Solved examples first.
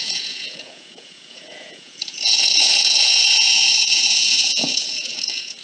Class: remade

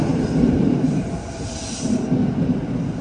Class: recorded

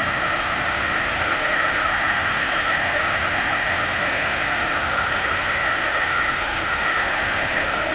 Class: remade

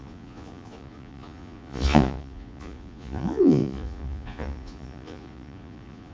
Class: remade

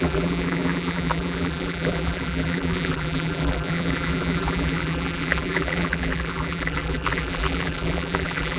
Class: remade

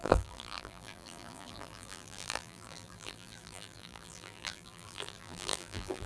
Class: remade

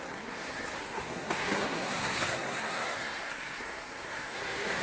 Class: remade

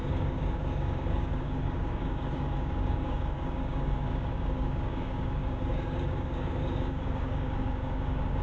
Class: remade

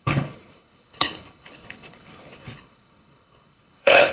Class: remade